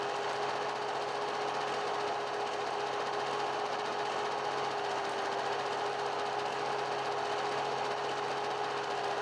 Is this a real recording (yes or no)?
yes